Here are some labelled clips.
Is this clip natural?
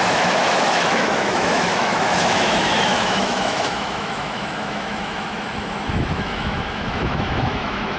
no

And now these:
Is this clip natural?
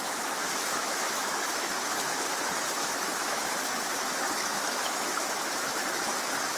no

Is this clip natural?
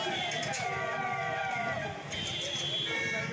yes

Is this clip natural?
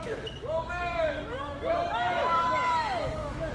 no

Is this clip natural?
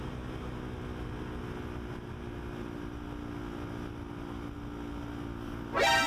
yes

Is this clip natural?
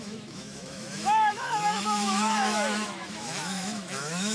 no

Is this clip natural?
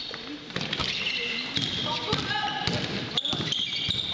yes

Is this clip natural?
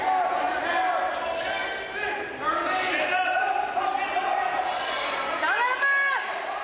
yes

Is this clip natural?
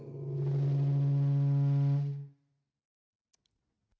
yes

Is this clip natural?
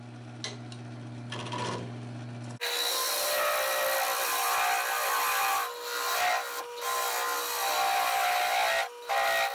yes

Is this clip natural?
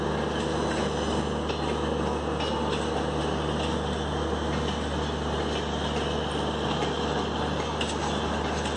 yes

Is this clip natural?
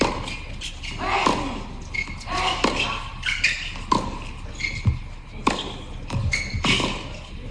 yes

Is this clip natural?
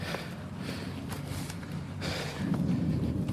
yes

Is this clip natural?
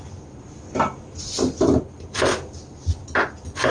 yes